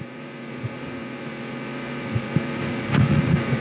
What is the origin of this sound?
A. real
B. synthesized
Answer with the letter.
B